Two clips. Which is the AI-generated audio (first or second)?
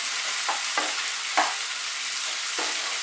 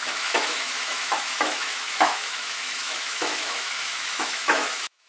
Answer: second